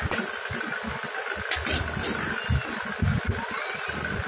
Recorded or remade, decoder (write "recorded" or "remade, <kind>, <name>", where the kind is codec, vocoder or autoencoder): recorded